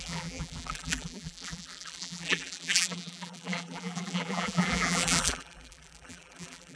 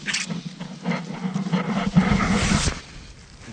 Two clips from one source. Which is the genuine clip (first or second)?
second